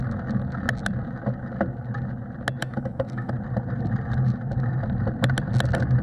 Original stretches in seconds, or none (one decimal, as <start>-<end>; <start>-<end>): 0.0-2.6; 3.3-6.0